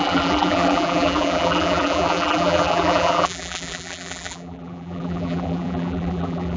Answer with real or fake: fake